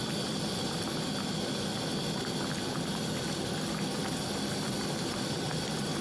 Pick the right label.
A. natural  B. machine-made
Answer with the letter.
A